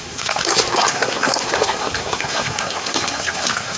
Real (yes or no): no